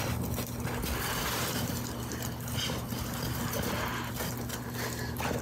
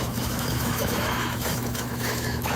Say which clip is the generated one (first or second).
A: second